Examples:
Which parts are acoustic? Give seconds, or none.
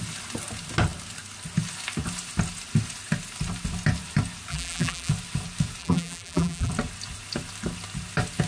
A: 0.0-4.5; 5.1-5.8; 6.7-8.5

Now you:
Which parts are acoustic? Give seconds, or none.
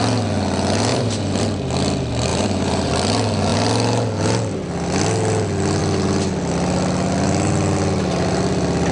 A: 0.0-0.9; 1.4-2.3; 2.9-8.9